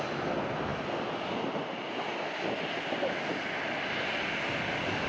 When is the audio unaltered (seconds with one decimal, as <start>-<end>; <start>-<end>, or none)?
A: 0.0-5.1